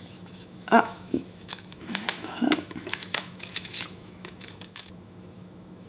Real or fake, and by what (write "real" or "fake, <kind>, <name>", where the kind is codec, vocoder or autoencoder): fake, autoencoder, DAC-VAE